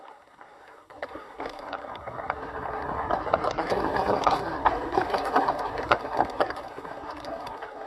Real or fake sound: fake